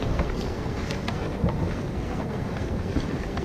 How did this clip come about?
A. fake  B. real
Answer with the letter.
A